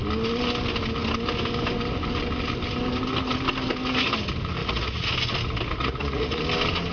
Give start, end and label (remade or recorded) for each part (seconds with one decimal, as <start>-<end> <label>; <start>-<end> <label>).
0.0-4.6 recorded; 4.6-5.1 remade; 5.1-5.8 recorded; 5.8-6.4 remade; 6.4-6.9 recorded